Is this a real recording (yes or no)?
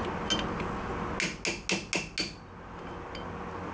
yes